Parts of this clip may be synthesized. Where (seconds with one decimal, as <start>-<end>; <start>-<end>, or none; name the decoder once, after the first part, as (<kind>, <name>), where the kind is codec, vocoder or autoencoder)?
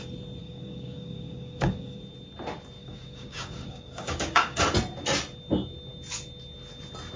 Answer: 0.4-2.0 (codec, DAC); 2.8-4.6